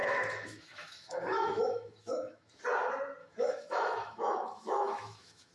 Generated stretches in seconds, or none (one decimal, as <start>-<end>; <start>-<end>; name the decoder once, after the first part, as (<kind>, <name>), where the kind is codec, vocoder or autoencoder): 0.0-2.6 (autoencoder, DAC-VAE); 3.2-5.5